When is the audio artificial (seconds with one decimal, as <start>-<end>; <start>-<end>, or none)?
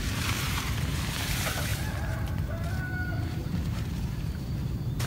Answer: 0.0-5.1